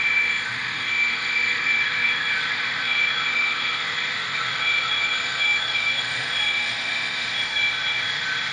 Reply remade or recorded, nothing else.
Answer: remade